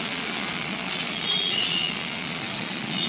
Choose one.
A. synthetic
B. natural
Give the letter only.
A